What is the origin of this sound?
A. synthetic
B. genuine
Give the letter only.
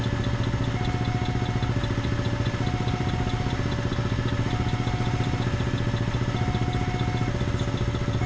B